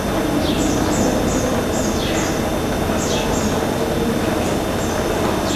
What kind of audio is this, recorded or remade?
recorded